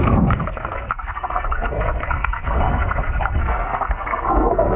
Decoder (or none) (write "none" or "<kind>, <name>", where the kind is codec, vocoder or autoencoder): codec, SNAC